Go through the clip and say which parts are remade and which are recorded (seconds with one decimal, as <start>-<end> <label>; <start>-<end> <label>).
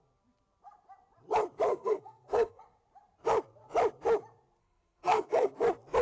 0.0-1.7 recorded; 1.7-2.6 remade; 2.6-4.6 recorded; 4.6-5.5 remade; 5.5-6.0 recorded